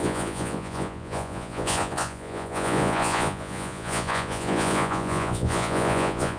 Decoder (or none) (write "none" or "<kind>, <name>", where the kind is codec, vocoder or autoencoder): vocoder, Vocos